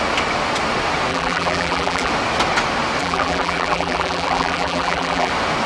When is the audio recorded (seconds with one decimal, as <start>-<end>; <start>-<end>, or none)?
0.0-1.1; 2.1-3.0; 5.3-5.7